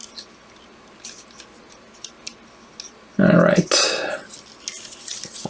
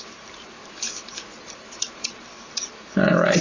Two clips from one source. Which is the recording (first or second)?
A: first